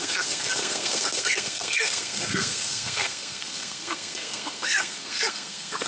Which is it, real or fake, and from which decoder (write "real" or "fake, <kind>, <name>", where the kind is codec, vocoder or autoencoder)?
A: fake, codec, SNAC